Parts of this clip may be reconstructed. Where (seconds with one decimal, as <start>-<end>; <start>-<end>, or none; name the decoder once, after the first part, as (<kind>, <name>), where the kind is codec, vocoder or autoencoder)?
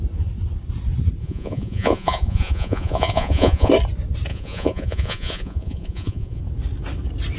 1.2-3.7 (vocoder, Vocos); 4.3-6.4